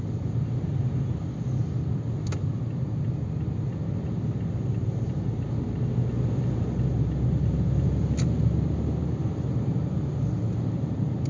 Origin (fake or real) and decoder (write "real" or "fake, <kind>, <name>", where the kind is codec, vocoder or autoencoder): real